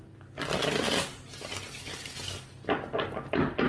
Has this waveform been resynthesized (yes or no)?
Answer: no